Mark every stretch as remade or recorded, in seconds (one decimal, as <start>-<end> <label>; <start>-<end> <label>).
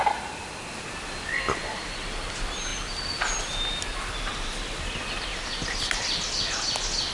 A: 0.0-7.1 recorded